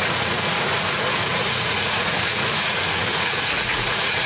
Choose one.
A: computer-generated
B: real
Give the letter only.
A